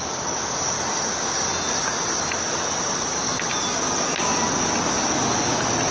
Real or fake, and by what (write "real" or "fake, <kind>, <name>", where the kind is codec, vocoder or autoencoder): real